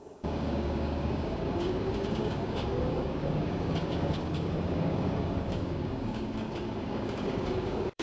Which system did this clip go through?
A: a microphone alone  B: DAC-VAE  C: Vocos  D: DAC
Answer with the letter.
D